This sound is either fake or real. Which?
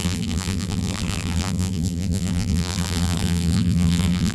fake